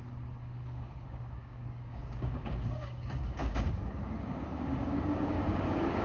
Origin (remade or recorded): remade